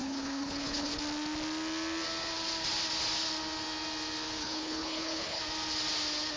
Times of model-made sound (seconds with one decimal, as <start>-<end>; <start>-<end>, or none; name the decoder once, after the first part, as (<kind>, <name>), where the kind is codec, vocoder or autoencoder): 0.0-1.0 (codec, HILCodec); 4.4-5.4